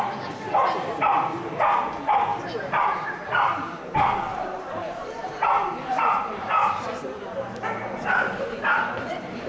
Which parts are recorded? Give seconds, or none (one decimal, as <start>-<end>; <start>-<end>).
0.0-2.3; 3.8-4.3